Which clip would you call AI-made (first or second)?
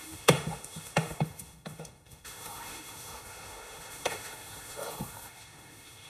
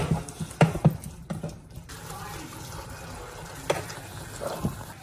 first